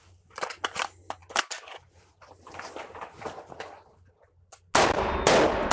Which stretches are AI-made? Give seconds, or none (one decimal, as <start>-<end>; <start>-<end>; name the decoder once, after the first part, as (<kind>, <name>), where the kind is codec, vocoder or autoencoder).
none